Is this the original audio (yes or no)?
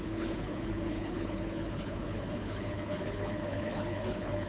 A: no